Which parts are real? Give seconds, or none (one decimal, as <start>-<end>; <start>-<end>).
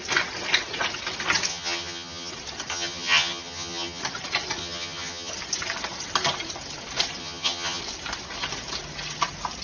0.0-1.5; 2.3-2.7; 4.0-4.6; 5.3-7.2; 7.8-9.6